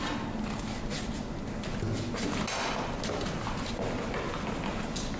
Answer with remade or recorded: recorded